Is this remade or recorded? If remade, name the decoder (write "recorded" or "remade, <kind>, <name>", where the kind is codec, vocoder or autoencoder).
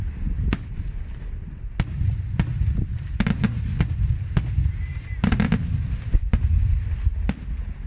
recorded